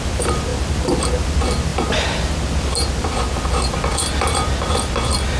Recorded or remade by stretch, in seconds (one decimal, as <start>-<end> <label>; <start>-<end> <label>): 0.0-5.4 recorded

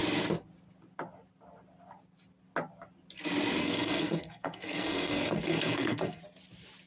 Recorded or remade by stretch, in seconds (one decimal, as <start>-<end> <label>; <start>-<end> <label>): 0.0-3.6 recorded; 3.6-6.2 remade; 6.2-6.9 recorded

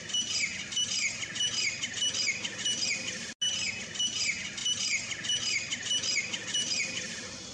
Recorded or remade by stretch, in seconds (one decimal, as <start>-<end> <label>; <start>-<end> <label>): 0.0-7.5 recorded

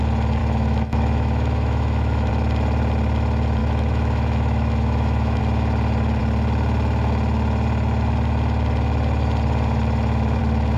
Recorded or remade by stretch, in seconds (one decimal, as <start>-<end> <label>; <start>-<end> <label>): 0.0-0.4 recorded; 0.4-2.3 remade; 2.3-3.6 recorded; 3.6-5.4 remade; 5.4-10.8 recorded

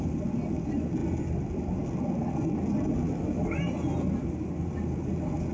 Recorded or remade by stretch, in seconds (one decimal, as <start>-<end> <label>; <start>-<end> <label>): 0.0-5.5 recorded